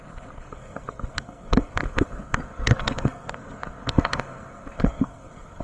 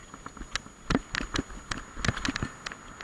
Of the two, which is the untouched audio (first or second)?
second